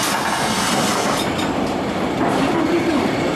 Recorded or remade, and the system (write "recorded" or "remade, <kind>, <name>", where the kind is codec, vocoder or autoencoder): remade, vocoder, BigVGAN v2